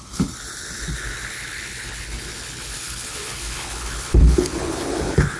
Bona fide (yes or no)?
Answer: no